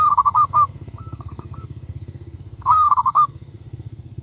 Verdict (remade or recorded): remade